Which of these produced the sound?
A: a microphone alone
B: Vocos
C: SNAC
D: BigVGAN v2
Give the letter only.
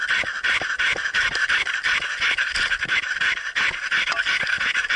A